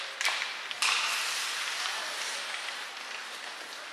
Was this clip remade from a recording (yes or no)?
no